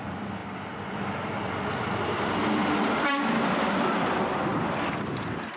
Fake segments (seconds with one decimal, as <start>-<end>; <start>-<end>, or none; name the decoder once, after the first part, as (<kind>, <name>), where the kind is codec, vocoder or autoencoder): 0.0-5.6 (vocoder, BigVGAN v2)